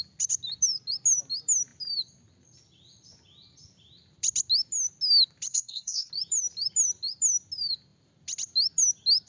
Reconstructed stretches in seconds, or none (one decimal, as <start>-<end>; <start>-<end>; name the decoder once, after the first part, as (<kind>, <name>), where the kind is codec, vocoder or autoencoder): 5.5-6.1 (codec, SNAC)